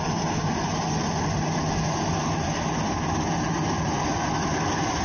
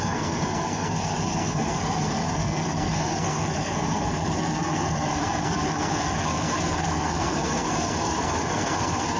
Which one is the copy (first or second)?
second